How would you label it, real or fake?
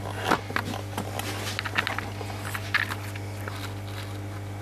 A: real